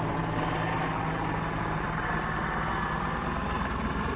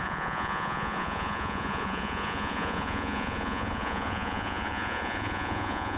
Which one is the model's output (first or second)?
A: second